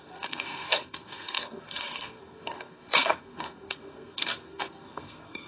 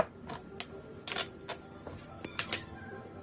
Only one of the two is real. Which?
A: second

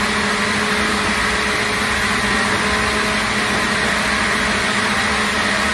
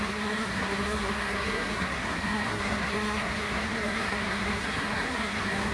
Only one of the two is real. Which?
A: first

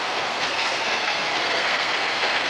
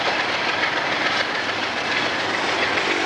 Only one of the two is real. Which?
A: second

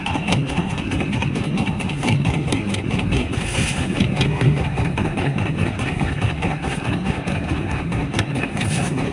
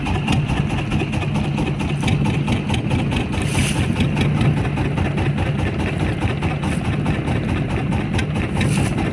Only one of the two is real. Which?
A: second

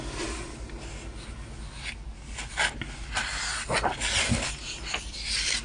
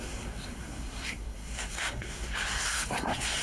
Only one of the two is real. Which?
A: first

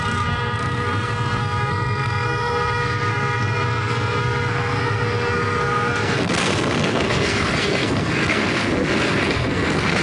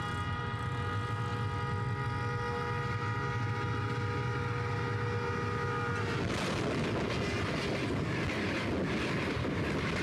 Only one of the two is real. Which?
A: second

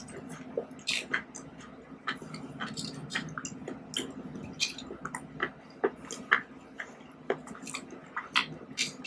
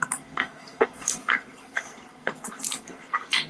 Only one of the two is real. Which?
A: first